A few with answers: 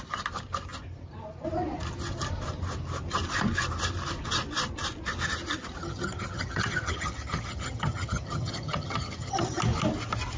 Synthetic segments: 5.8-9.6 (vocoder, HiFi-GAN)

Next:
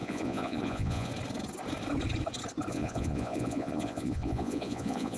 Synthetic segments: 0.0-1.1 (vocoder, Vocos); 2.7-5.2

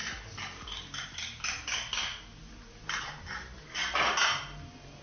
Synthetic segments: none

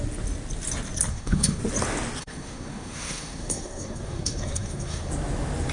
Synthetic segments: 1.1-1.6 (codec, SNAC); 2.2-5.1

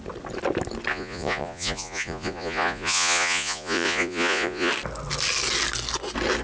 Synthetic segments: 0.9-4.7 (vocoder, Vocos)

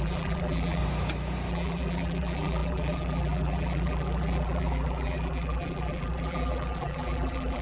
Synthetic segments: 0.0-0.8 (vocoder, BigVGAN v2); 1.5-7.6

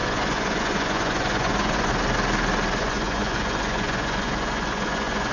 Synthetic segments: 0.0-1.9 (vocoder, Vocos); 2.8-5.3